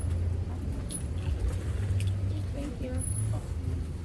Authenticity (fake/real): real